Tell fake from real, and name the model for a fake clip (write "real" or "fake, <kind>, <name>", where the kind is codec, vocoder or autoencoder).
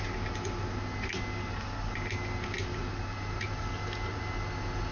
real